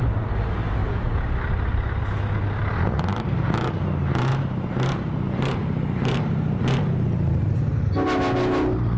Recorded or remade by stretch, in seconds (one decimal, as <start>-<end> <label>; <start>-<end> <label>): 0.0-0.8 recorded; 0.8-2.0 remade; 2.0-4.3 recorded; 4.3-6.6 remade; 6.6-9.0 recorded